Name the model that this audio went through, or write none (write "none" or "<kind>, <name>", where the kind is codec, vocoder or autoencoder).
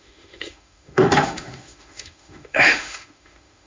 autoencoder, DAC-VAE